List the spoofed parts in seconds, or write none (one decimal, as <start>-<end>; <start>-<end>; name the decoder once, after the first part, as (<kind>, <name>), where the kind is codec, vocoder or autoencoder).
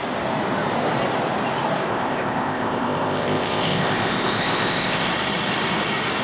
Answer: 1.9-5.1 (codec, ZipCodec)